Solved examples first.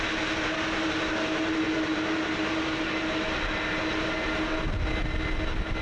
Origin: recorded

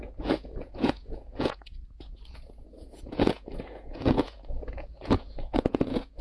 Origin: remade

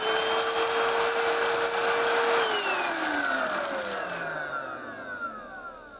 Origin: recorded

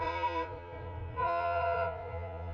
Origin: remade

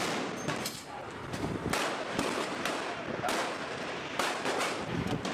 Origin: recorded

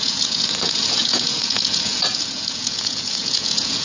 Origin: remade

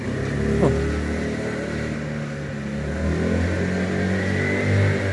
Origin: recorded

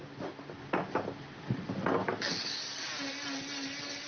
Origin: recorded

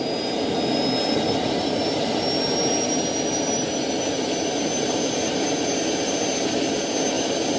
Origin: recorded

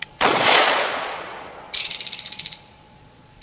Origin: remade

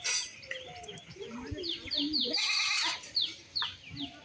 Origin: recorded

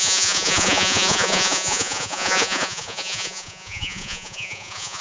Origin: remade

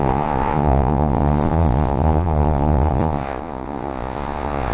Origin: remade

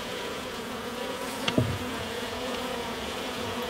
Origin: remade